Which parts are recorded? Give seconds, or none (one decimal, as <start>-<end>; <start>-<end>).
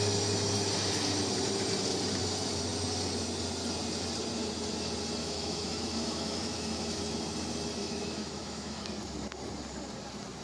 0.0-5.2; 7.0-7.8; 8.9-10.4